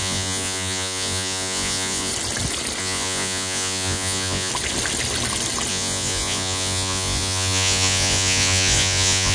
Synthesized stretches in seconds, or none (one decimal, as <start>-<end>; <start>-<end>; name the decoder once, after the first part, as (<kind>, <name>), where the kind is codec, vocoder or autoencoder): 0.0-2.1 (vocoder, Vocos); 2.8-4.5; 5.7-9.3